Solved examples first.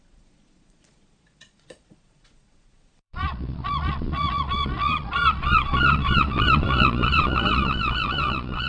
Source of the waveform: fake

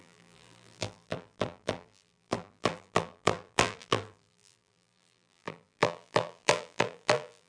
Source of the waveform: fake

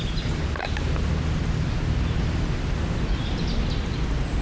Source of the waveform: real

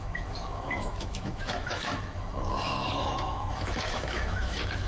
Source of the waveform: fake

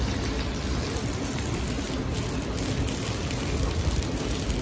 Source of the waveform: real